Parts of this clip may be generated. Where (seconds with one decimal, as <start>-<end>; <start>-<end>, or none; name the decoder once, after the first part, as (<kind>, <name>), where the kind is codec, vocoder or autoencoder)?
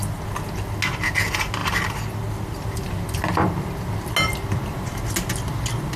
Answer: none